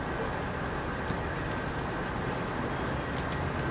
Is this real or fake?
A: real